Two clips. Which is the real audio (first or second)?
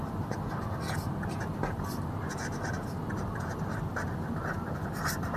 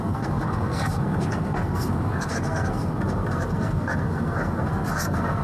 first